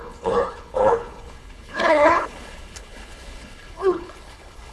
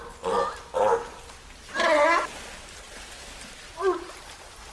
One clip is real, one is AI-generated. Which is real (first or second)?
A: second